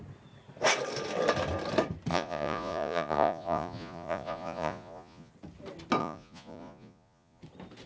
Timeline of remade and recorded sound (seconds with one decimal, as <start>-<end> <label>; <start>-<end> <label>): 0.0-2.1 recorded; 2.1-5.3 remade; 5.3-6.0 recorded; 6.0-7.4 remade; 7.4-7.9 recorded